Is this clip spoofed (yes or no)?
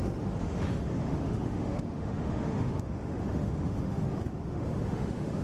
yes